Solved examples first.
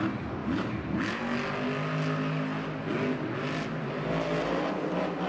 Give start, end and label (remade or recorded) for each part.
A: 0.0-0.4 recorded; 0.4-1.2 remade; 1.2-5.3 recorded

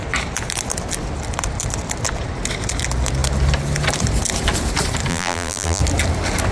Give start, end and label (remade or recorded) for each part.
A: 0.0-5.1 recorded; 5.1-5.8 remade; 5.8-6.5 recorded

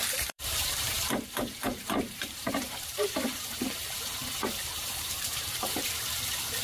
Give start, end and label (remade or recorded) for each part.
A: 0.0-4.0 remade; 4.0-4.7 recorded; 4.7-5.9 remade; 5.9-6.6 recorded